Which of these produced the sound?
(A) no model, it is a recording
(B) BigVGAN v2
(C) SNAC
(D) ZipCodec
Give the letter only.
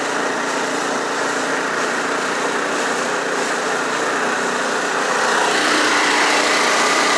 B